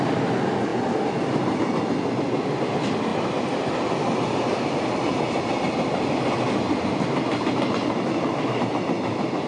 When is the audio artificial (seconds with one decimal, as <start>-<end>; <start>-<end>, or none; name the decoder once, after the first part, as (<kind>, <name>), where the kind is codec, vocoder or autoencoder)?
none